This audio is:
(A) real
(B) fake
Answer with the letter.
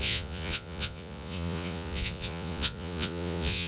B